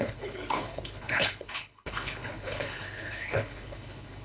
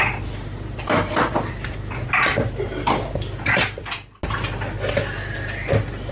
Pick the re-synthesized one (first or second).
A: first